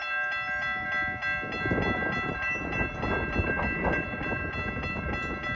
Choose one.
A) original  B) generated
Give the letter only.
A